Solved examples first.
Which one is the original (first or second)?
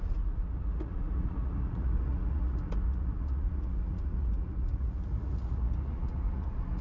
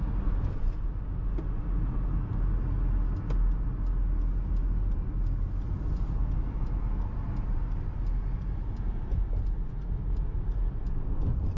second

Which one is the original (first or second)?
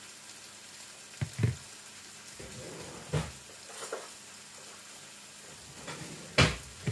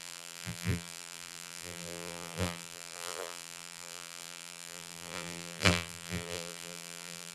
first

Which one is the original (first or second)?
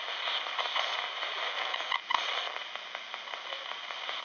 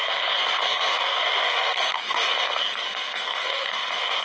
first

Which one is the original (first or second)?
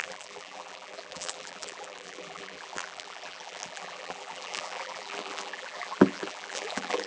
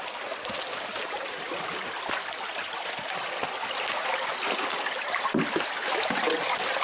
second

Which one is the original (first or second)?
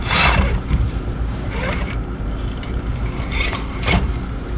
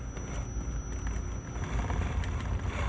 second